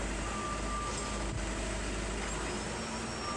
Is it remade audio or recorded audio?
recorded